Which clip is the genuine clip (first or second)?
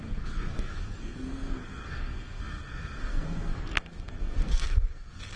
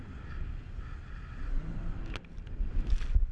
second